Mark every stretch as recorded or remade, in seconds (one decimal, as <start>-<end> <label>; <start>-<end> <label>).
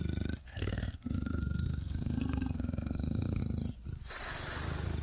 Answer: 0.0-0.4 recorded; 0.4-3.4 remade; 3.4-5.0 recorded